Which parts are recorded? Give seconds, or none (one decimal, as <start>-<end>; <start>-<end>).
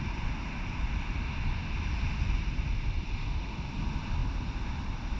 0.0-5.2